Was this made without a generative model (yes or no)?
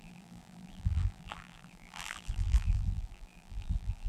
no